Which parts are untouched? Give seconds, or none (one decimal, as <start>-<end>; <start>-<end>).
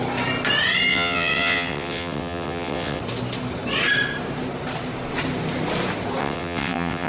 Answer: 0.0-0.9; 3.0-6.2